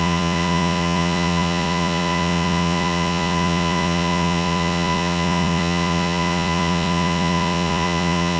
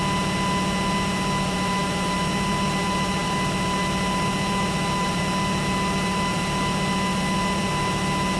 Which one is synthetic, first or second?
first